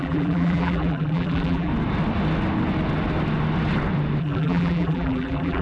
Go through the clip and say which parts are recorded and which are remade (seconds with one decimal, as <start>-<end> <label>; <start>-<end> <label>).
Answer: 0.0-1.7 remade; 1.7-4.2 recorded; 4.2-5.6 remade

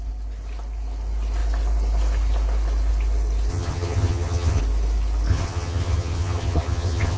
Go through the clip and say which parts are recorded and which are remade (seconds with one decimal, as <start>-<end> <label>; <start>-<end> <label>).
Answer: 0.0-3.5 recorded; 3.5-4.6 remade; 4.6-5.3 recorded; 5.3-7.2 remade

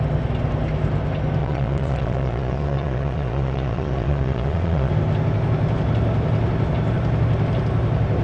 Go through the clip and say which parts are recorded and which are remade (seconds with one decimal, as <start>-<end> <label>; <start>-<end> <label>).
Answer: 0.0-1.4 recorded; 1.4-4.9 remade; 4.9-8.2 recorded

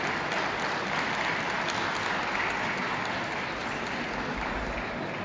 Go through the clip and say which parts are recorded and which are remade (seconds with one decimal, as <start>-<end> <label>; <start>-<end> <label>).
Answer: 0.0-3.6 recorded; 3.6-4.5 remade; 4.5-5.2 recorded

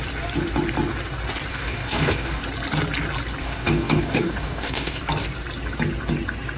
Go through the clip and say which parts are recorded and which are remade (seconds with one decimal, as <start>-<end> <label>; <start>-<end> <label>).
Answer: 0.0-1.5 recorded; 1.5-2.4 remade; 2.4-3.4 recorded; 3.4-5.0 remade; 5.0-6.6 recorded

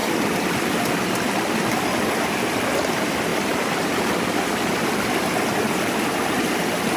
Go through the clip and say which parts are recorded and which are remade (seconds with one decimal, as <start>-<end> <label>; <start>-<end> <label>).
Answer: 0.0-3.3 recorded; 3.3-4.0 remade; 4.0-7.0 recorded